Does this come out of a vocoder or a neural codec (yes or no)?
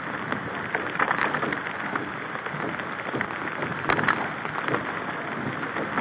no